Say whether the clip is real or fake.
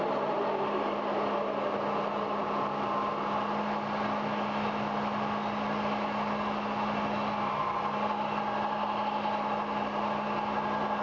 real